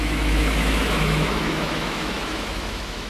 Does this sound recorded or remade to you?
remade